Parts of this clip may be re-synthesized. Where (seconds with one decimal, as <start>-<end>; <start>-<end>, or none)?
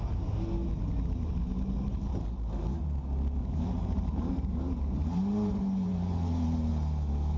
3.4-6.7